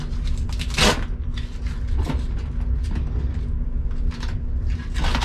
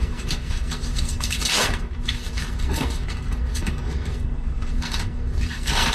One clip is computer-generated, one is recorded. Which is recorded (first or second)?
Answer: first